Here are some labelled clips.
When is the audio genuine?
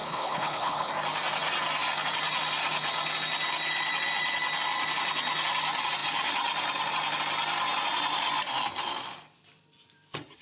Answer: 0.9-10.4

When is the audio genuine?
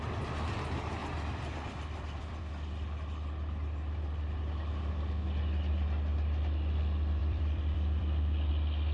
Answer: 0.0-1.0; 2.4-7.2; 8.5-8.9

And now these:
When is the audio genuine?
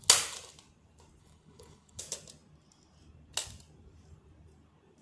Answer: 0.0-1.2; 2.0-5.0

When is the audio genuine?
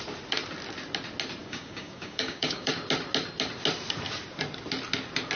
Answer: 0.0-1.4; 2.7-5.4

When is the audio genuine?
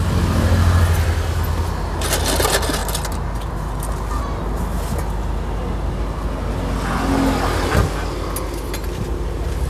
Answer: 0.0-9.7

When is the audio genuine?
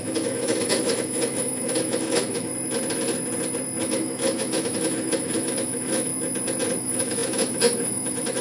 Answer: 2.5-3.8; 6.1-6.8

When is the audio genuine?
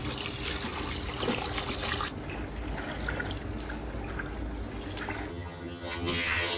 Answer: 0.0-5.3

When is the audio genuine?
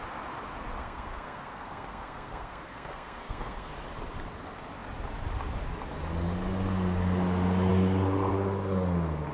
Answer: 0.0-0.8; 3.7-9.3